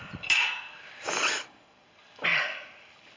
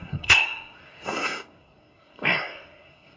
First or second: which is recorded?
first